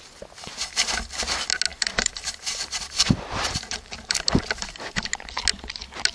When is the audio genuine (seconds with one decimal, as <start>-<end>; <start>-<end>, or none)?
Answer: 0.0-1.7; 4.4-6.1